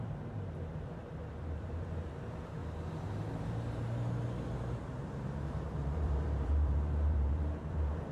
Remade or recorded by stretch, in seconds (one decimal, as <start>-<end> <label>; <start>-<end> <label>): 0.0-2.6 remade; 2.6-5.0 recorded; 5.0-8.1 remade